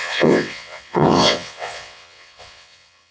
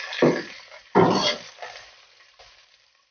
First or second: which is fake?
first